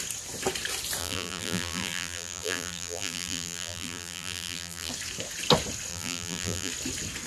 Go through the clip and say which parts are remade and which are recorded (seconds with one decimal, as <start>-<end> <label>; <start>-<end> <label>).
0.0-1.0 recorded; 1.0-4.9 remade; 4.9-5.9 recorded; 5.9-6.7 remade; 6.7-7.3 recorded